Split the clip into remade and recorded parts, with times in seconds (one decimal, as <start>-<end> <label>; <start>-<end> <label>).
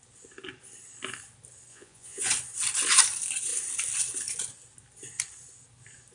0.0-1.7 recorded; 1.7-2.3 remade; 2.3-6.1 recorded